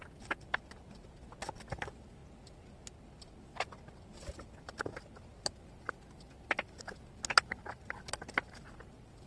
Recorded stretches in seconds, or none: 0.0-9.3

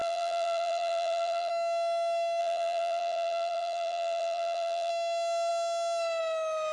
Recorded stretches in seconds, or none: 1.5-2.4; 4.9-6.7

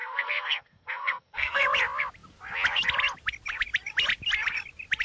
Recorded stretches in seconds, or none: 1.6-5.0

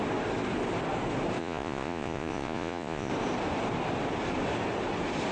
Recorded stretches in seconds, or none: 0.0-1.4; 3.1-5.3

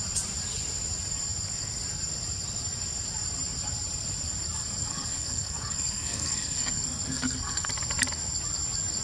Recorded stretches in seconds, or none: 0.0-4.6; 7.7-9.0

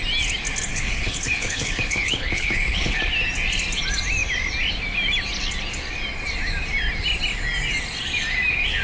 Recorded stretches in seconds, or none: 0.0-0.7; 3.0-8.8

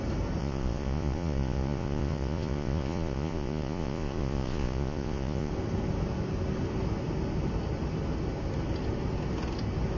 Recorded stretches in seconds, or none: 0.0-0.4; 5.5-10.0